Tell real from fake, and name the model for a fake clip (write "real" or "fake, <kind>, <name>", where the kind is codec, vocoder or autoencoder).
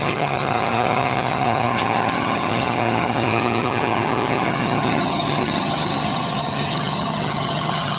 fake, vocoder, HiFi-GAN